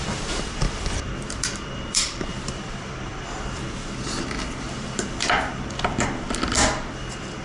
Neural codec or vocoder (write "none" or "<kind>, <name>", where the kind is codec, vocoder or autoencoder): vocoder, BigVGAN v2